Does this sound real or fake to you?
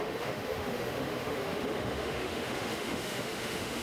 fake